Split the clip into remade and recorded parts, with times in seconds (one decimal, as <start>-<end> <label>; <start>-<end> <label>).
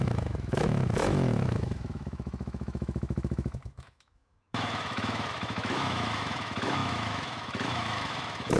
0.0-8.6 remade